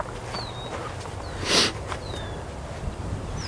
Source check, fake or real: real